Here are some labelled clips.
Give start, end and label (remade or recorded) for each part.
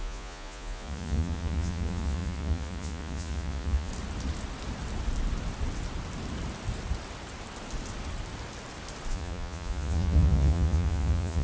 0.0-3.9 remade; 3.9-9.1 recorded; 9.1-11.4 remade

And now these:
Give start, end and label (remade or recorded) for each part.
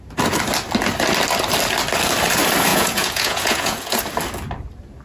0.0-2.7 recorded; 2.7-4.0 remade; 4.0-5.0 recorded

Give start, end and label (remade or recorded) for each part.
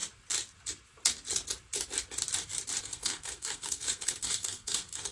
0.0-2.8 recorded; 2.8-5.1 remade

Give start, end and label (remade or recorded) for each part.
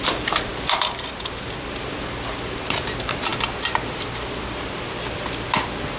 0.0-6.0 recorded